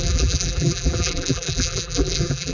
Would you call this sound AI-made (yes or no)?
yes